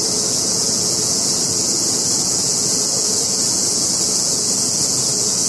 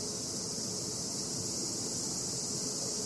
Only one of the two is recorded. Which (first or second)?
second